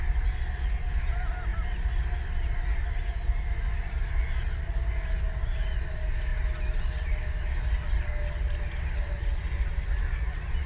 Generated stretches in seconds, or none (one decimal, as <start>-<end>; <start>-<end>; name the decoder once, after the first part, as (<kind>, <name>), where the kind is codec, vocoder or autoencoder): none